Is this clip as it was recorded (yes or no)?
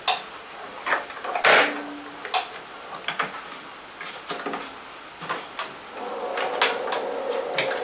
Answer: yes